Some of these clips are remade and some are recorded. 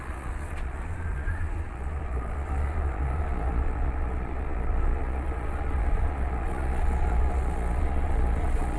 remade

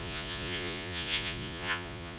remade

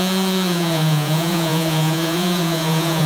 remade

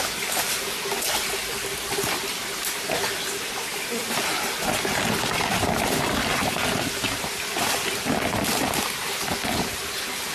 recorded